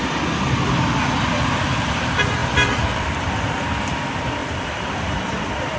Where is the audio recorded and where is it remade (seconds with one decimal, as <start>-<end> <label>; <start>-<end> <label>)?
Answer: 0.0-2.4 recorded; 2.4-3.8 remade; 3.8-4.4 recorded; 4.4-5.8 remade